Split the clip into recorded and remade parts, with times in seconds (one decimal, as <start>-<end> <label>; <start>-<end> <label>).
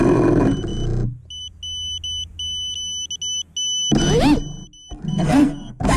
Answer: 0.0-5.1 recorded; 5.1-6.0 remade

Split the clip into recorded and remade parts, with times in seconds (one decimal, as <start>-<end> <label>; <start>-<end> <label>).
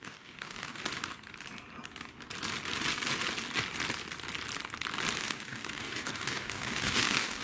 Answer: 0.0-0.8 remade; 0.8-5.2 recorded; 5.2-7.4 remade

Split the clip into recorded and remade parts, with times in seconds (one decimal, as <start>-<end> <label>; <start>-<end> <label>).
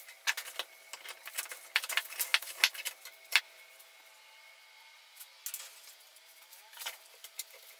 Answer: 0.0-6.1 recorded; 6.1-7.8 remade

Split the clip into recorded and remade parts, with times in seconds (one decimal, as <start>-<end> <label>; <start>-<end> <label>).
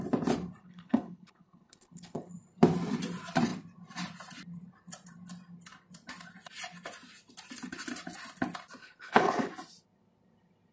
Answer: 0.0-0.6 recorded; 0.6-2.3 remade; 2.3-8.8 recorded; 8.8-9.5 remade; 9.5-10.7 recorded